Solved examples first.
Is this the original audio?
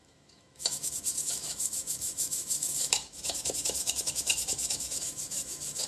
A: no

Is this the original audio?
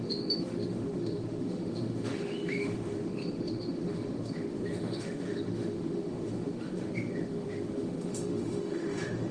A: no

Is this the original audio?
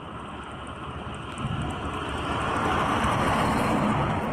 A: yes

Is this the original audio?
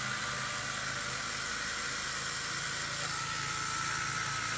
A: yes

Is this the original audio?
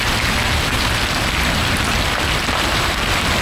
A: yes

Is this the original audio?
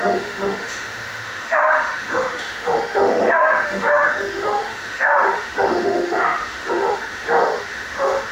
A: no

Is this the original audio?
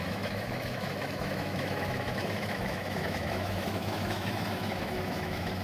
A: no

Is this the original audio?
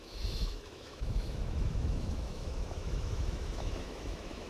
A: no